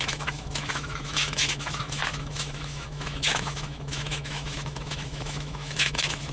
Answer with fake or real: fake